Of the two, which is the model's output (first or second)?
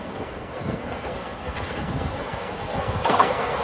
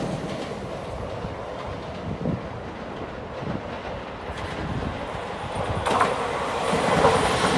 first